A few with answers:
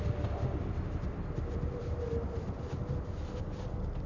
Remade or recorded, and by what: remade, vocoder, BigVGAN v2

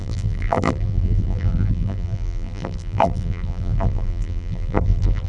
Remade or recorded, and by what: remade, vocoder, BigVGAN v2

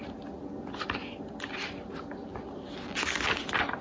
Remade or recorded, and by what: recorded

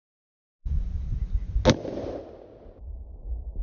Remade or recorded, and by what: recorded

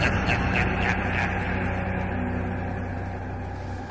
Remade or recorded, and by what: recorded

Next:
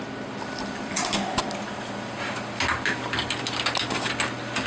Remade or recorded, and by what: recorded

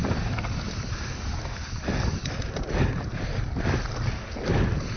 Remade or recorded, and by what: recorded